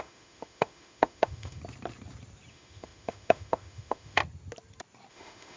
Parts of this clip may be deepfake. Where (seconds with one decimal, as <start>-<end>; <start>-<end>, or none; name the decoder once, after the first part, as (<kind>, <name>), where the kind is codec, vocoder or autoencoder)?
0.0-1.6 (autoencoder, DAC-VAE); 2.5-4.2; 5.1-5.6